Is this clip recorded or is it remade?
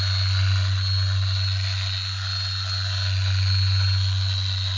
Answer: recorded